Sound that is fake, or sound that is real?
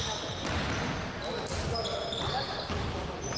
real